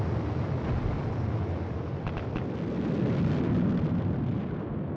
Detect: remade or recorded recorded